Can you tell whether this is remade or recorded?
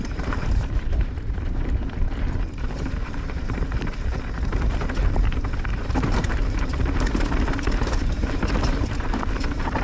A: remade